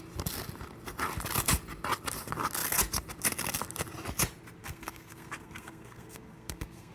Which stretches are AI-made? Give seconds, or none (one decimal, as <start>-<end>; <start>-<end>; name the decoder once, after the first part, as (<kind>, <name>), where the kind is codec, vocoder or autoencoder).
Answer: 4.6-6.9 (codec, SNAC)